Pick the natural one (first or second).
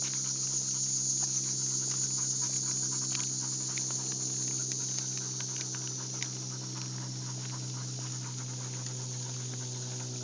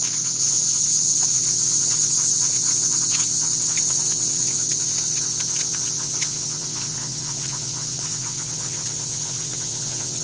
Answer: first